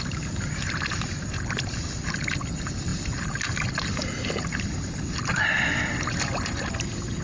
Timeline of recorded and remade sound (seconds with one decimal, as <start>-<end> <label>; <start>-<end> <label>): 0.0-7.2 recorded